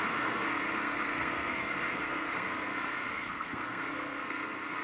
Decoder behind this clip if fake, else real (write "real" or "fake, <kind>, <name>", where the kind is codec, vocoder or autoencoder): fake, codec, SNAC